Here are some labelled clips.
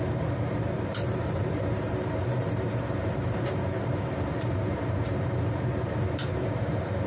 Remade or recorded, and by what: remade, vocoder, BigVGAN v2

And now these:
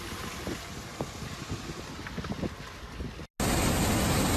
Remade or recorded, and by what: recorded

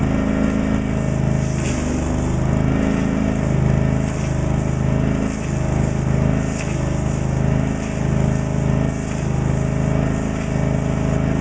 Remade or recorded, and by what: recorded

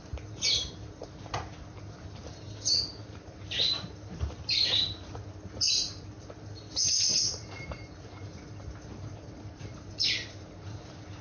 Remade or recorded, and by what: remade, vocoder, BigVGAN v2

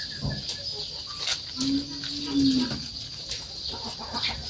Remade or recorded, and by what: recorded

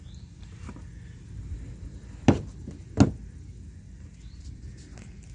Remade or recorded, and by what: recorded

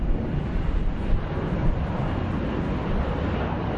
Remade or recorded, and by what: recorded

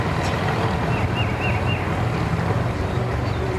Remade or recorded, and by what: recorded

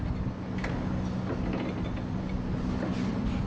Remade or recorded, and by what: recorded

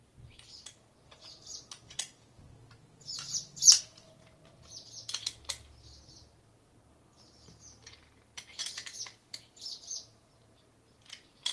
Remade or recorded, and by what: recorded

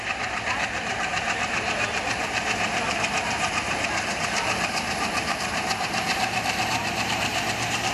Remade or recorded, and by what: remade, vocoder, BigVGAN v2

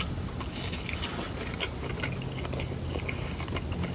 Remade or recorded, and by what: recorded